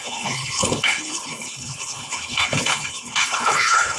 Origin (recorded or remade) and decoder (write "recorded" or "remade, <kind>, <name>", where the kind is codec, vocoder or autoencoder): remade, codec, HILCodec